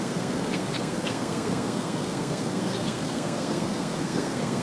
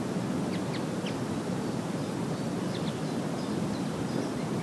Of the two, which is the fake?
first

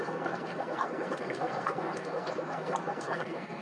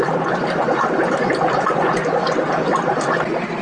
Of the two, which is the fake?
first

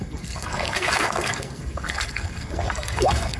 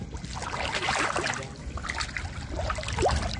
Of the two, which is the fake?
first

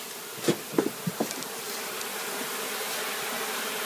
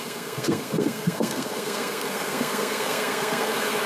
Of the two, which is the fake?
second